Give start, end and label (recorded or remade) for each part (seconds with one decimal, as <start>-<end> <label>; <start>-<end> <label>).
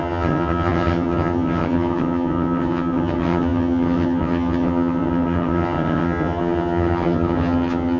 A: 0.0-8.0 remade